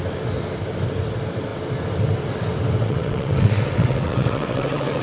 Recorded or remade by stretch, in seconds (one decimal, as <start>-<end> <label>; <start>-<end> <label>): 0.0-2.8 recorded; 2.8-5.0 remade